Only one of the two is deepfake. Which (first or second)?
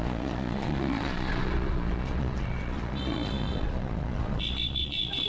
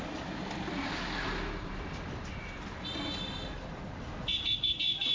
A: first